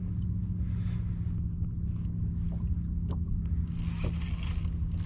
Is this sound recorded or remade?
recorded